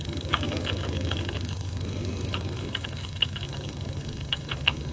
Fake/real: fake